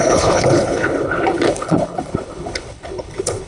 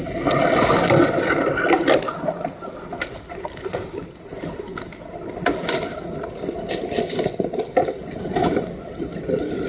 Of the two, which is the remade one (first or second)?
first